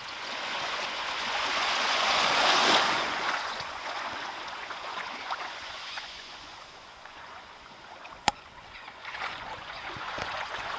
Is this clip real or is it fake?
fake